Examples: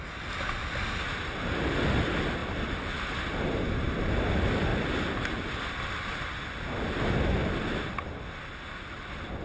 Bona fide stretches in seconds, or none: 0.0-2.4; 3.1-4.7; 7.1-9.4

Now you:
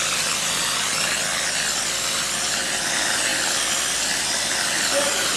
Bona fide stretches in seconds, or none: 0.9-1.8

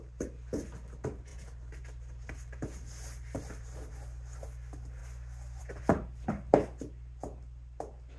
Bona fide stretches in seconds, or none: 0.0-1.3; 3.9-8.2